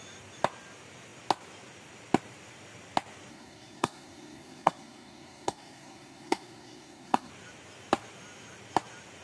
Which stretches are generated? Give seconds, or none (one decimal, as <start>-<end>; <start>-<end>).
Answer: 3.3-7.3